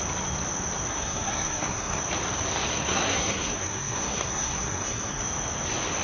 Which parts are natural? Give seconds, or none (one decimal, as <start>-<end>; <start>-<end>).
0.0-0.9; 2.0-2.7; 5.2-6.0